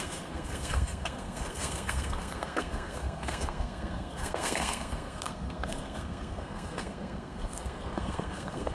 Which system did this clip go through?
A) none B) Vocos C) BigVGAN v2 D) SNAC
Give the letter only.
D